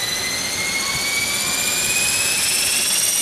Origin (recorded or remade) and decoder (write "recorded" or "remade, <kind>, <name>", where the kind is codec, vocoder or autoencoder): recorded